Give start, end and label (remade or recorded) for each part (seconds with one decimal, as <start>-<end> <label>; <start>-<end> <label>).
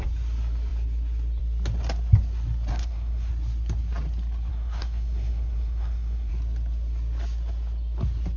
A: 0.0-2.7 recorded; 2.7-3.3 remade; 3.3-4.5 recorded; 4.5-6.3 remade; 6.3-8.4 recorded